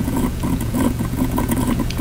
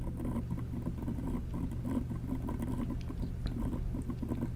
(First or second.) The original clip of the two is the second